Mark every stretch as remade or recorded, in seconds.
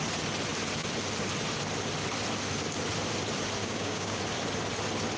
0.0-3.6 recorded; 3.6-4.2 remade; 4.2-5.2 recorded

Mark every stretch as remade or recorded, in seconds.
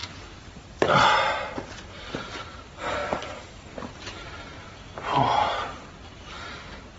0.0-7.0 recorded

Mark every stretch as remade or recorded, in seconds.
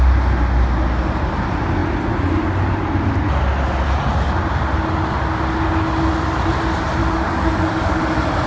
0.0-7.0 recorded; 7.0-8.0 remade; 8.0-8.5 recorded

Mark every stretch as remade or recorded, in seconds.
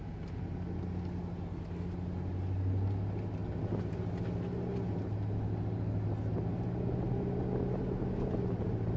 0.0-9.0 recorded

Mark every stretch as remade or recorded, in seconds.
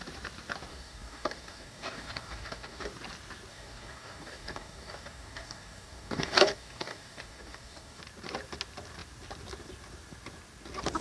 0.0-0.7 recorded; 0.7-2.9 remade; 2.9-3.5 recorded; 3.5-8.0 remade; 8.0-11.0 recorded